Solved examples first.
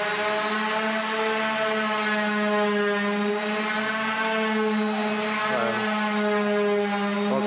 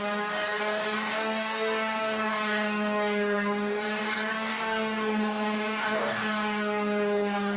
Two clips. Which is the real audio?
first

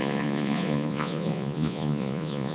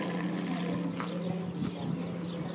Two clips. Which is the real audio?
second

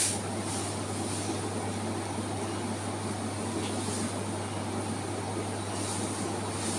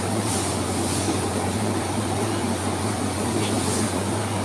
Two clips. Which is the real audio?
first